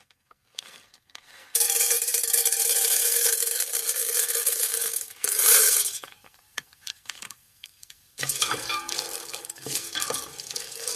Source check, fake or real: fake